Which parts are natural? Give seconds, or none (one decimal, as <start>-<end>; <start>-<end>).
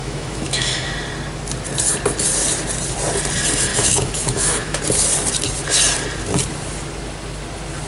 0.9-3.7; 4.8-7.9